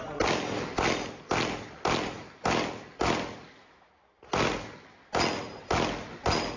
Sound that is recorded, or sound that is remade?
recorded